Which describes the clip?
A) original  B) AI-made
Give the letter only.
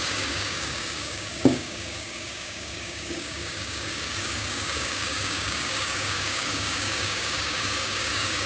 B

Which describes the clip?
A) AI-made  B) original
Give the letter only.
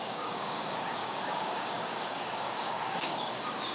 A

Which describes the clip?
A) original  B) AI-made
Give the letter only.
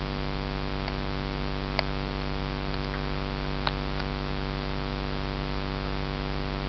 A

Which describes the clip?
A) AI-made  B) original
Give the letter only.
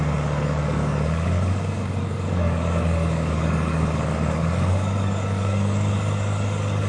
A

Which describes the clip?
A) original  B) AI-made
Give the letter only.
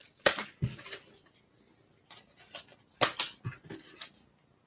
A